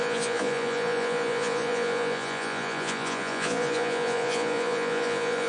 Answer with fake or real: fake